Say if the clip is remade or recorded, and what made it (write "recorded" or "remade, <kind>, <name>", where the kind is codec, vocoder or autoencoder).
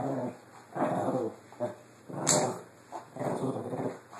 recorded